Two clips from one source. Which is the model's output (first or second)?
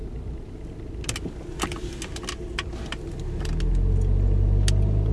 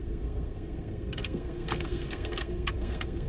second